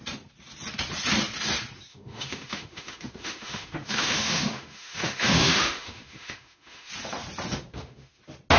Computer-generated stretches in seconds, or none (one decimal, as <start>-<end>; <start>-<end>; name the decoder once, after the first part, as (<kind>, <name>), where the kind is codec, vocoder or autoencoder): 1.9-6.9 (autoencoder, DAC-VAE); 7.7-8.2